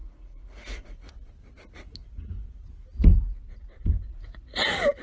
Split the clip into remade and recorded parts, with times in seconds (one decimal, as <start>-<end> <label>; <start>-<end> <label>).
0.0-1.3 remade; 1.3-2.0 recorded; 2.0-2.6 remade; 2.6-5.0 recorded